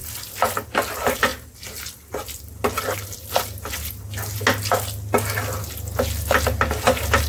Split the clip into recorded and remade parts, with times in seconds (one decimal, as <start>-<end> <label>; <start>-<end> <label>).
0.0-7.3 recorded